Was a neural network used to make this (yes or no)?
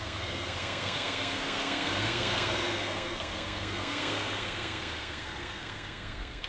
yes